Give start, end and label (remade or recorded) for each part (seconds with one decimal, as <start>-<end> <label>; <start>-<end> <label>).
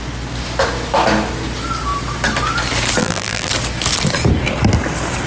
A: 0.0-3.0 recorded; 3.0-3.5 remade; 3.5-5.3 recorded